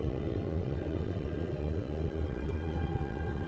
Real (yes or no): no